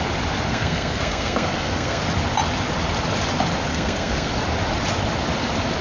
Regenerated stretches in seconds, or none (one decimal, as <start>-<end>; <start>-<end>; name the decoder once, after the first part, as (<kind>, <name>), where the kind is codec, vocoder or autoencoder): 0.5-2.0 (codec, SNAC); 3.7-4.3